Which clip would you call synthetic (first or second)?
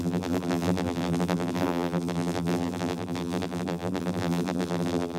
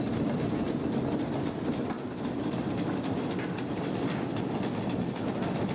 first